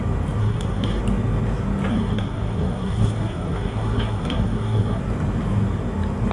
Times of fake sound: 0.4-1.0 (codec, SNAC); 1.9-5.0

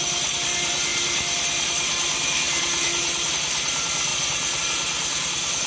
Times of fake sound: none

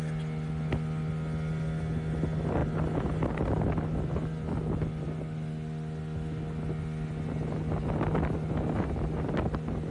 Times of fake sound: none

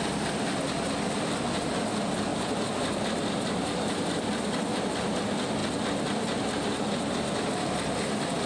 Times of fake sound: none

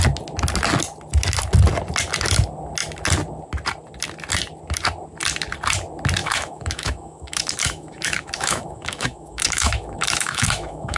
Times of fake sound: 6.2-11.0 (autoencoder, DAC-VAE)

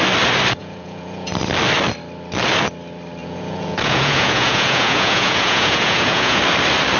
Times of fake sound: 0.6-1.3 (vocoder, Vocos); 3.2-6.4